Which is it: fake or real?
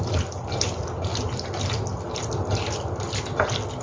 real